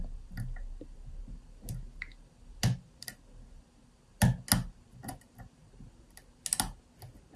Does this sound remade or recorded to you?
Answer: recorded